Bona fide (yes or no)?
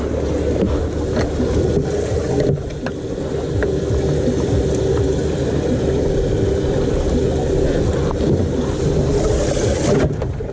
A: yes